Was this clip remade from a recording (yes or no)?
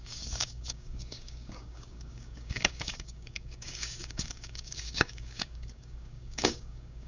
yes